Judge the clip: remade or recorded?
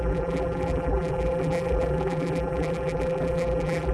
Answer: remade